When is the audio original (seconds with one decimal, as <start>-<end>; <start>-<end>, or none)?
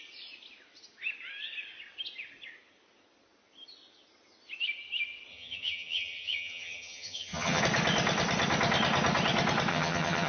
0.0-5.3; 7.6-9.7